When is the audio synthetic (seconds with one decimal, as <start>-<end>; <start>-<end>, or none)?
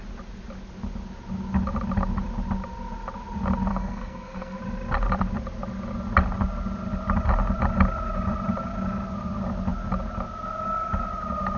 3.7-4.6